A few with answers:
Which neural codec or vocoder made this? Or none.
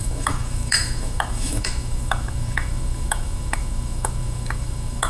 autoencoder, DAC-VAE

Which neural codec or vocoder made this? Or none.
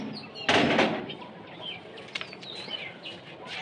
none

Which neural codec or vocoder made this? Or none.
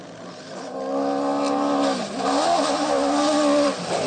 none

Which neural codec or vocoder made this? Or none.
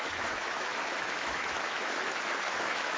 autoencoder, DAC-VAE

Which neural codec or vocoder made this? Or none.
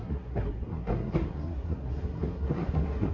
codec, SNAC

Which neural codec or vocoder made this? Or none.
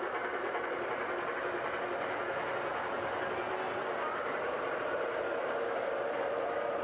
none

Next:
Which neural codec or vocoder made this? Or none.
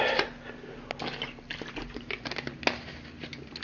none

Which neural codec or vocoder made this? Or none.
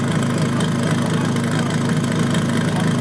none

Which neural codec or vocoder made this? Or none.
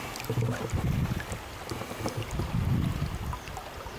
none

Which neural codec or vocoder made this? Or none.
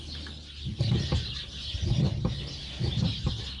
none